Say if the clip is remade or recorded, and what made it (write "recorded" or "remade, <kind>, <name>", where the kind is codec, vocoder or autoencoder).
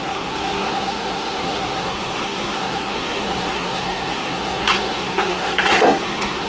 remade, codec, SNAC